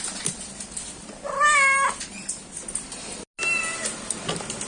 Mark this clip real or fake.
real